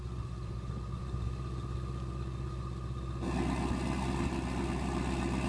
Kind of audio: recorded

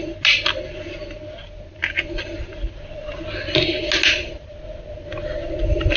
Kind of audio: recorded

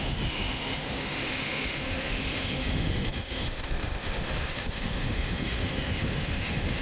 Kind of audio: remade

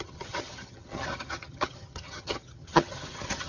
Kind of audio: remade